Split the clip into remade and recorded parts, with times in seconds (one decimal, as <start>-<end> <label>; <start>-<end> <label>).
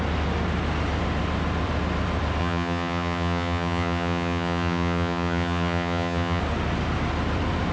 0.0-2.4 recorded; 2.4-6.4 remade; 6.4-7.7 recorded